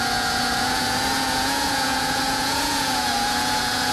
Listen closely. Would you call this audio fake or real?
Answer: fake